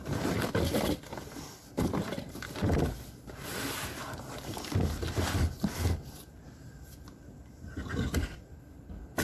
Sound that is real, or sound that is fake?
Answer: real